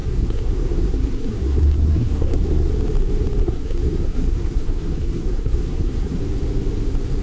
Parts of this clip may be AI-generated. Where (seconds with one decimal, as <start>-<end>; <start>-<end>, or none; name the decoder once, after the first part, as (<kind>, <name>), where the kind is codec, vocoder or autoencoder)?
0.0-2.7 (codec, SNAC); 3.4-6.2